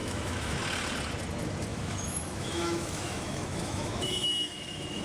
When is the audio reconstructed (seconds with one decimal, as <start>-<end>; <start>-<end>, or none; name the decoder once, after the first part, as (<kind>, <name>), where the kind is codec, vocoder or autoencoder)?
0.0-0.6 (autoencoder, DAC-VAE); 1.7-5.0